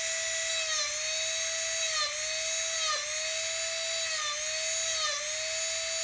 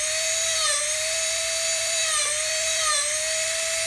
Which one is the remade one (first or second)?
second